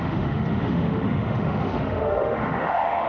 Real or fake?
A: fake